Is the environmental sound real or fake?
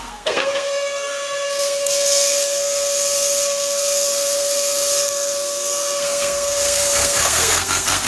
fake